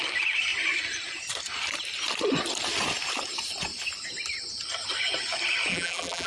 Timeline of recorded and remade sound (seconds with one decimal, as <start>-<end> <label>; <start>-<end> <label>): 0.0-5.7 recorded; 5.7-6.3 remade